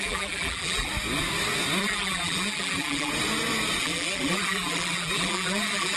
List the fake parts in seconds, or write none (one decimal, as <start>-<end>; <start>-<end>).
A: 0.0-0.9; 1.8-3.1; 3.8-6.0